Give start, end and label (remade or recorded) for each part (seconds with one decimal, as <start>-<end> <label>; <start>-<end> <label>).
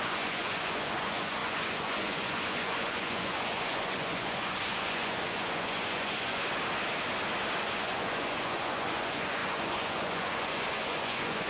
0.0-6.4 remade; 6.4-7.6 recorded; 7.6-11.5 remade